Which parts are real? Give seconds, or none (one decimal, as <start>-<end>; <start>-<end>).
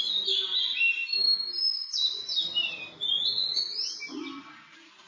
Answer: 0.0-5.1